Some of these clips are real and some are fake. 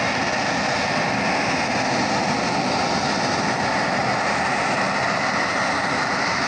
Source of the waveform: real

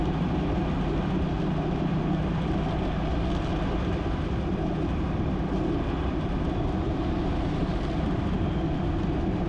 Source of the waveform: real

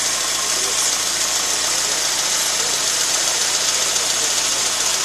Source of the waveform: real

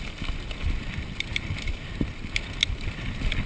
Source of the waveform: real